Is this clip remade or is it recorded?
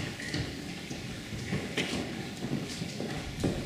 remade